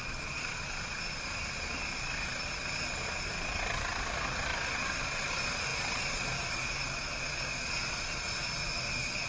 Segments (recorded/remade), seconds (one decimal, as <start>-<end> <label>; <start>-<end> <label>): 0.0-9.3 recorded